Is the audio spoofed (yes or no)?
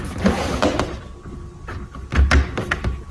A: no